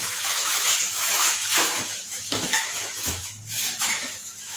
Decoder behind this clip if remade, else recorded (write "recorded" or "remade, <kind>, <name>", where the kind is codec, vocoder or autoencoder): remade, autoencoder, DAC-VAE